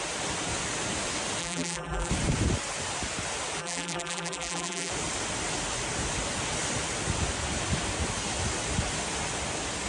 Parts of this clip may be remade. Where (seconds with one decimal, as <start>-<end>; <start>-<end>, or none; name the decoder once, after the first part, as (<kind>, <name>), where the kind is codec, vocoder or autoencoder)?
1.4-2.1 (vocoder, BigVGAN v2); 3.6-4.9